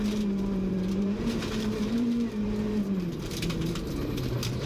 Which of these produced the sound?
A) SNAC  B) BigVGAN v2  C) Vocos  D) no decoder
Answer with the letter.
B